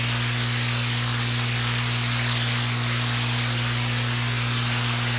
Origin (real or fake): real